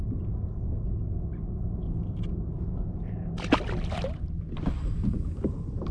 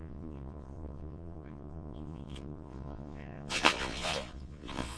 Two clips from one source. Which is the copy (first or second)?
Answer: second